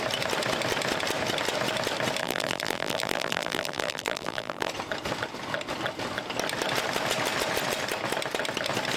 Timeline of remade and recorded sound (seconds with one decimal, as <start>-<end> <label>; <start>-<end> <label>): 0.0-2.2 recorded; 2.2-4.7 remade; 4.7-9.0 recorded